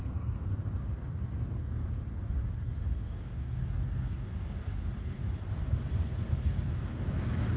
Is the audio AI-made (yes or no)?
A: no